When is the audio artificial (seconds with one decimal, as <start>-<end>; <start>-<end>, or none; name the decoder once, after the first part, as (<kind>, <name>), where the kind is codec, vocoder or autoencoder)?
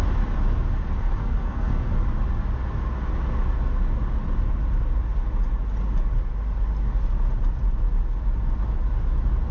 1.2-1.9 (codec, SNAC)